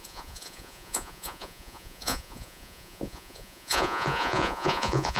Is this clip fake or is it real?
fake